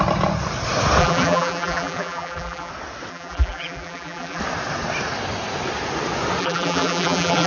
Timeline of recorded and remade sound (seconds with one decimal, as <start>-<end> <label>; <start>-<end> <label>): 0.0-1.0 recorded; 1.0-2.7 remade; 2.7-3.1 recorded; 3.1-4.4 remade; 4.4-6.4 recorded; 6.4-7.5 remade